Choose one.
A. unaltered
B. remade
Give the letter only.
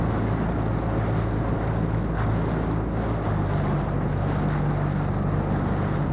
A